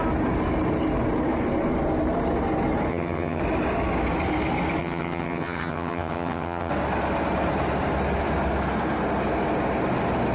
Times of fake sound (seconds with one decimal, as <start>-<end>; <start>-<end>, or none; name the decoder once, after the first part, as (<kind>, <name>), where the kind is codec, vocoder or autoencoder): 2.9-3.4 (vocoder, HiFi-GAN); 4.8-6.7